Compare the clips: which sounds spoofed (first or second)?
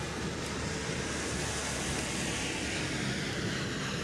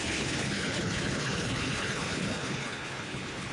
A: second